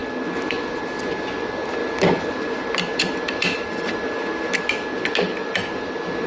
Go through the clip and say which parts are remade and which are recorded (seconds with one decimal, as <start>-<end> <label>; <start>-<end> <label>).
0.0-1.0 remade; 1.0-1.8 recorded; 1.8-4.7 remade; 4.7-6.3 recorded